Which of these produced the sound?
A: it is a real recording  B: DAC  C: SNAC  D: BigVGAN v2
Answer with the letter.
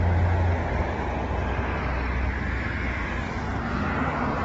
A